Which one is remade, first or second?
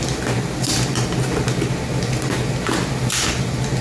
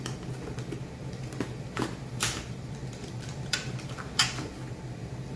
second